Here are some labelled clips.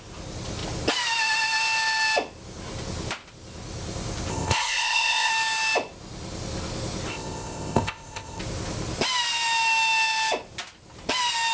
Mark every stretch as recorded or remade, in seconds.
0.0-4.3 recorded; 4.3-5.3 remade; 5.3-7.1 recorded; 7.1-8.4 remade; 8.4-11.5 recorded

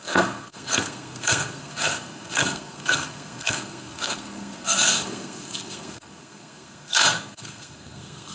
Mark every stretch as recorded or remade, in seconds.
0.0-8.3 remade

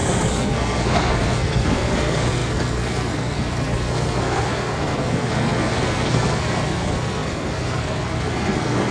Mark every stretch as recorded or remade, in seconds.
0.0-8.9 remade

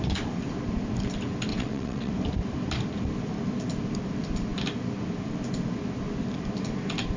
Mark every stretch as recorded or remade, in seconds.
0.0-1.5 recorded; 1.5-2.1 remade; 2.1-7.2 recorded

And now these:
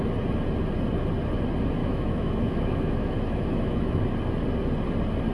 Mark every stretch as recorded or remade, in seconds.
0.0-1.8 recorded; 1.8-4.0 remade; 4.0-5.3 recorded

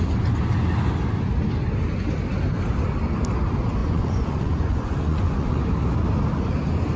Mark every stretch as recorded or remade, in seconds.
0.0-3.8 recorded; 3.8-5.6 remade; 5.6-7.0 recorded

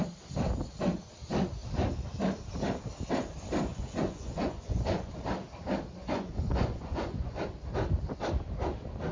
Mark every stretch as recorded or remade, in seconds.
0.0-3.7 recorded; 3.7-5.1 remade; 5.1-6.0 recorded; 6.0-7.4 remade; 7.4-9.1 recorded

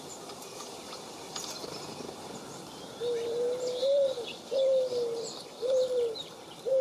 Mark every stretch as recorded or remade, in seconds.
0.0-4.7 remade; 4.7-5.6 recorded; 5.6-6.8 remade